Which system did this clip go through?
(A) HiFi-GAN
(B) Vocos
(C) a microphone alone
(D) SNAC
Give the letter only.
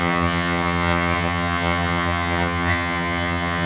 A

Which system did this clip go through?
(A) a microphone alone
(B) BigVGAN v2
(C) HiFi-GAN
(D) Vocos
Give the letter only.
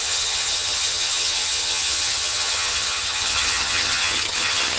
C